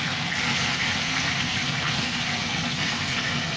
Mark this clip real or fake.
fake